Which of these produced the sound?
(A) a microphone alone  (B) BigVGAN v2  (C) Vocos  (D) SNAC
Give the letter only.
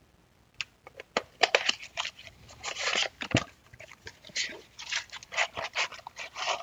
A